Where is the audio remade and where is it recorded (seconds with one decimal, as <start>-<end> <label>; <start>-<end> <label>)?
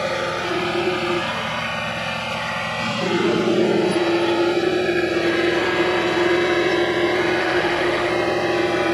0.0-7.4 recorded; 7.4-8.1 remade; 8.1-8.9 recorded